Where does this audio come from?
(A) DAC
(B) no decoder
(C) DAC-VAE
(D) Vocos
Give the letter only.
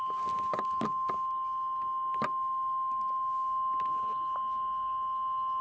B